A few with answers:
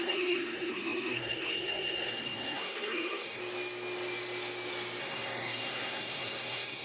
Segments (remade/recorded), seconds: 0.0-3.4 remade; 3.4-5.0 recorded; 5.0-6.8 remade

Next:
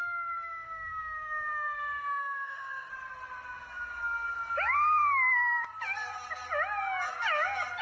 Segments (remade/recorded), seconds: 0.0-2.9 remade; 2.9-7.8 recorded

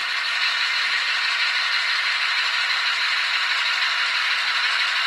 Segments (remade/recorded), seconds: 0.0-3.0 recorded; 3.0-5.1 remade

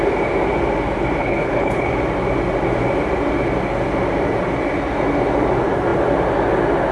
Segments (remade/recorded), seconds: 0.0-1.2 recorded; 1.2-1.9 remade; 1.9-6.9 recorded

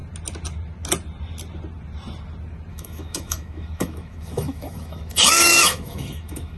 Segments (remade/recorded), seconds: 0.0-2.7 recorded; 2.7-6.6 remade

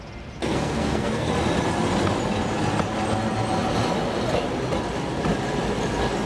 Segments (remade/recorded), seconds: 0.0-0.4 recorded; 0.4-1.3 remade; 1.3-6.3 recorded

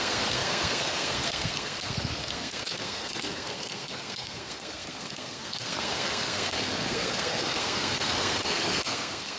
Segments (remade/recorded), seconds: 0.0-9.4 remade